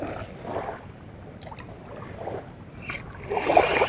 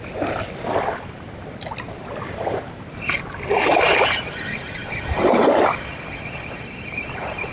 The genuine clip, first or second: first